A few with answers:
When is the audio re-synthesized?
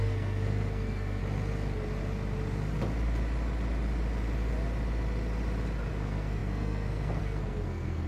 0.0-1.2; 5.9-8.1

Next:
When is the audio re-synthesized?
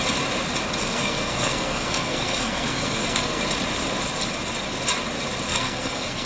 0.8-3.4; 5.5-6.3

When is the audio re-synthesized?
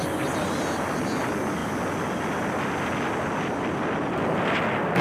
none